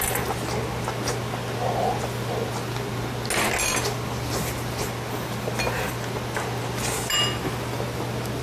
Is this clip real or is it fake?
real